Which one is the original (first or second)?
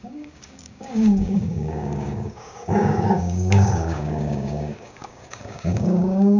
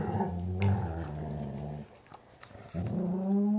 second